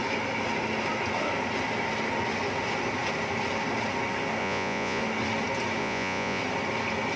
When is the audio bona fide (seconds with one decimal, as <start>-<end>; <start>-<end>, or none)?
0.0-4.4; 5.0-5.8; 6.4-7.2